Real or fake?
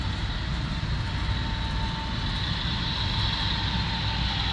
real